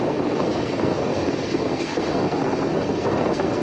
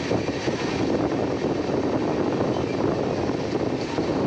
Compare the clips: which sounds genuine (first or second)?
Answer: second